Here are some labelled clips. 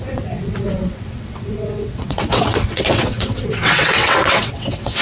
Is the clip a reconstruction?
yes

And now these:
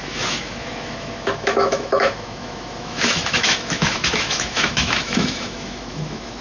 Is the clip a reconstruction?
yes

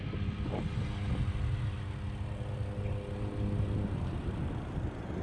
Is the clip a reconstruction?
no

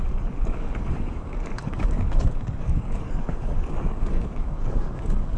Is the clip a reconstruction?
yes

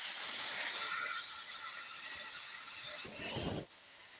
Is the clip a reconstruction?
no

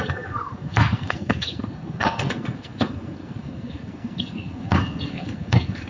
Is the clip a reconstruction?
yes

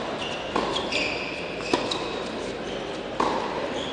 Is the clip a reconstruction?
no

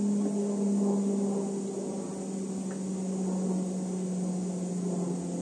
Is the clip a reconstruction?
no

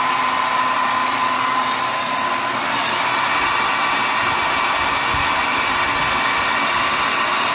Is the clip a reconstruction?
no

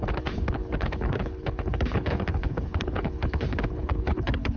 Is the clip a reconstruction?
yes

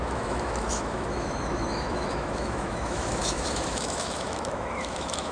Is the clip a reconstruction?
yes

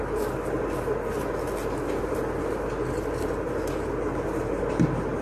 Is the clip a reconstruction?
no